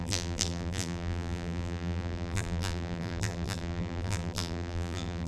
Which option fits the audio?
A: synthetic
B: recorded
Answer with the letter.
A